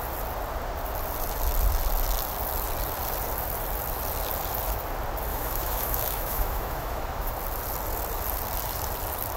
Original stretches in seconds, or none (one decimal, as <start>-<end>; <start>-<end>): 0.0-5.3; 7.3-9.4